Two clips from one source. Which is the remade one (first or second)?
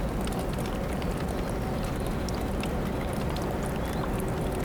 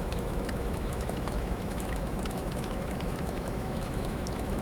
second